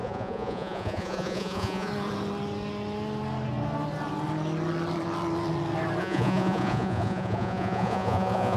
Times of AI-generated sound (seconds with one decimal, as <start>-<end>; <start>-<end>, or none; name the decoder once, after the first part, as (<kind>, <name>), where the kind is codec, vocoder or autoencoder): 0.0-1.9 (vocoder, Vocos); 6.0-8.6